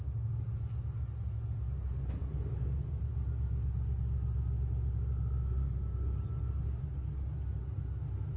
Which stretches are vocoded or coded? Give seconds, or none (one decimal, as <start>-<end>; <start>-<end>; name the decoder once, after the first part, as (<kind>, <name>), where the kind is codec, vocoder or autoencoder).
none